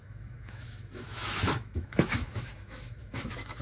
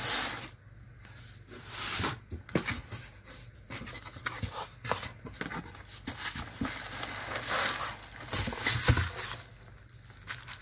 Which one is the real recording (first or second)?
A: second